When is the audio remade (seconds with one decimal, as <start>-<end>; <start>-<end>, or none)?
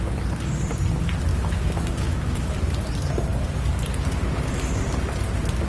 1.3-2.5